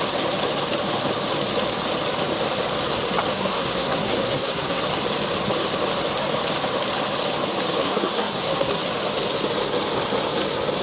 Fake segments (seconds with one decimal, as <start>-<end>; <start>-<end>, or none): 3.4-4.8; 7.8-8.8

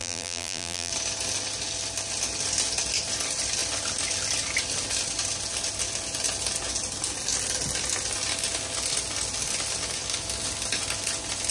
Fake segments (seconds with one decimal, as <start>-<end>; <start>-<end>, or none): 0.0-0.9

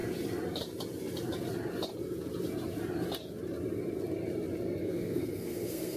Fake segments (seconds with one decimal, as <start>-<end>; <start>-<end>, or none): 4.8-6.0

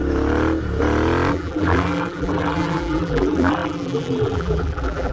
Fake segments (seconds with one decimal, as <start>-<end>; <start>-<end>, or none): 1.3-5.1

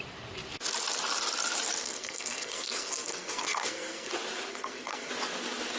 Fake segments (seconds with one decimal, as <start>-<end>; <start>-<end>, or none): 1.8-4.1; 4.5-5.1

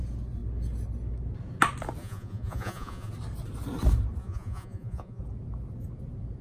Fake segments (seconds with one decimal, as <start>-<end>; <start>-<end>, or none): 2.0-3.1; 4.2-5.2

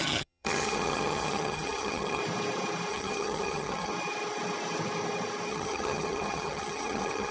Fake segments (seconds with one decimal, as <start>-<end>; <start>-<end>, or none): 0.0-2.2; 2.9-3.9; 5.5-7.3

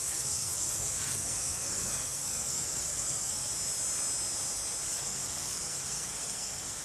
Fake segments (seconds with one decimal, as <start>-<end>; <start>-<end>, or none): 0.0-3.5; 4.9-6.8